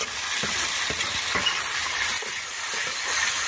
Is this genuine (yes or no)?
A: yes